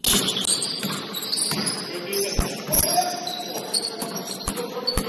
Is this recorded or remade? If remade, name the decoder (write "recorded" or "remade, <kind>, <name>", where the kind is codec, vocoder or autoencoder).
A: recorded